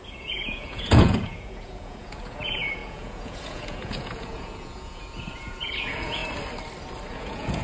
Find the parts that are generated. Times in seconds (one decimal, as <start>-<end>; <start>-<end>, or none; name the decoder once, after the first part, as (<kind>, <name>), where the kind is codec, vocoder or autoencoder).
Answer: 0.0-6.2 (vocoder, Vocos); 7.1-7.6